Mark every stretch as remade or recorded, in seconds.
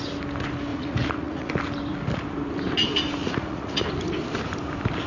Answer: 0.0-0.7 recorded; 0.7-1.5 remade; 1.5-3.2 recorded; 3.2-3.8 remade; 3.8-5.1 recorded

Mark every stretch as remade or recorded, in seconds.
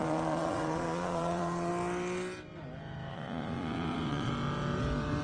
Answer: 0.0-1.7 remade; 1.7-3.1 recorded; 3.1-4.3 remade; 4.3-5.2 recorded